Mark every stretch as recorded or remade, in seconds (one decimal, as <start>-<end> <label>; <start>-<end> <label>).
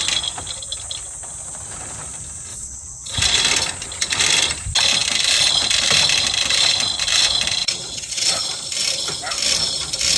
0.0-2.5 recorded; 2.5-3.2 remade; 3.2-7.6 recorded; 7.6-8.4 remade; 8.4-10.2 recorded